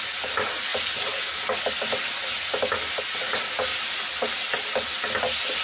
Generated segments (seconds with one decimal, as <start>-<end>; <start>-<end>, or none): none